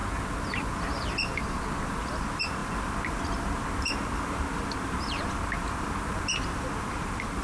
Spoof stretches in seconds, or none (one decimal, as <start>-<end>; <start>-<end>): 1.8-7.4